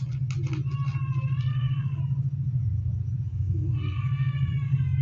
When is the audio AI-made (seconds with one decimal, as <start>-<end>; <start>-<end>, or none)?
1.5-2.0; 3.3-5.0

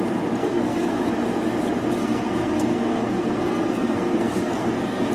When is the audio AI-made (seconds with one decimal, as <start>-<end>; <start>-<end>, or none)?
0.4-1.0; 2.0-5.1

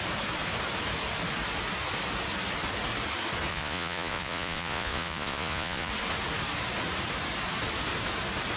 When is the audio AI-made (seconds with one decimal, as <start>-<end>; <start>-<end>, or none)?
3.5-5.9

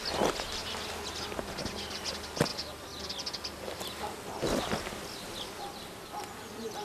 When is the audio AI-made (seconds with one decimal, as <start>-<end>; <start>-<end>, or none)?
none

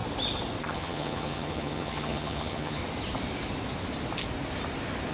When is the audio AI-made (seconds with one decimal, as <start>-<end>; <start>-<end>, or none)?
0.6-2.8

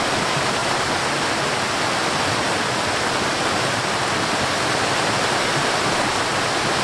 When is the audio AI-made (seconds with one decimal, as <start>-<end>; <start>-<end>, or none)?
none

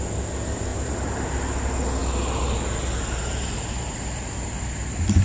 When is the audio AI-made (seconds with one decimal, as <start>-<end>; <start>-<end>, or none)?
0.7-1.3; 2.0-5.2

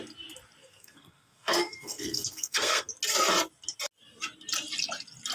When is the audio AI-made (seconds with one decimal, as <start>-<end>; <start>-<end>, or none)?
0.6-2.9